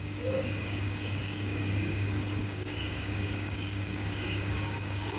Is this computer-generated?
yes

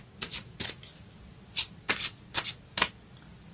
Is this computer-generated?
no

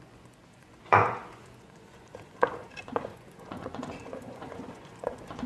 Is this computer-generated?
yes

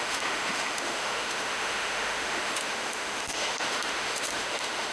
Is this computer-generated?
yes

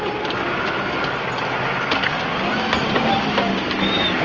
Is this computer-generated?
no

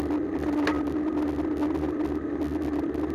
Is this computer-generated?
no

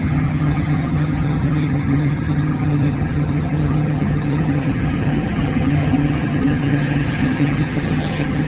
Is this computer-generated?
yes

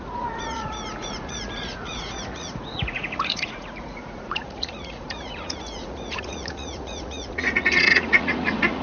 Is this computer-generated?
yes